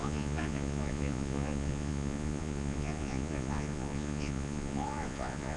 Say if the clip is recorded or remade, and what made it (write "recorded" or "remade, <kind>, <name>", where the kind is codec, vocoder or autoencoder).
remade, vocoder, Vocos